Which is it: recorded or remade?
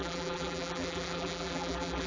remade